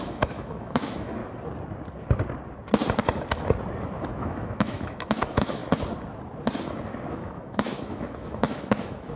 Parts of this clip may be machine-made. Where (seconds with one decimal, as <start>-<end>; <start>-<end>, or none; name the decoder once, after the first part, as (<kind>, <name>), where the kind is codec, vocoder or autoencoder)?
0.0-1.2 (autoencoder, DAC-VAE); 4.0-5.6; 7.1-9.2